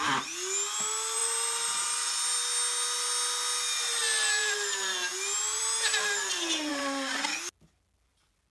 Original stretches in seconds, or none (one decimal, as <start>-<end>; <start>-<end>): 0.0-1.2; 2.1-6.7; 7.3-8.5